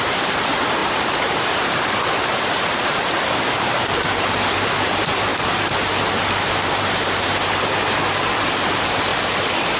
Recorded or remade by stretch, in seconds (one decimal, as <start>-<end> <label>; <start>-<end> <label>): 0.0-5.3 remade; 5.3-6.5 recorded; 6.5-9.8 remade